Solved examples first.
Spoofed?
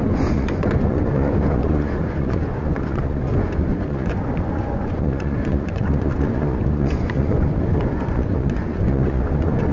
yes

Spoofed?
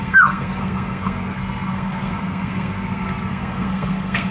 yes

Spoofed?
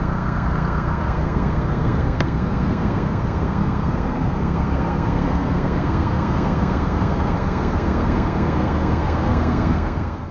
yes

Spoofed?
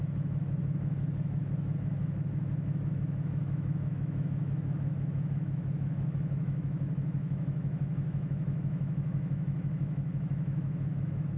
yes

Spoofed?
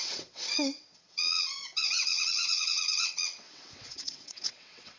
yes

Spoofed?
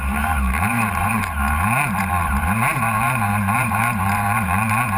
yes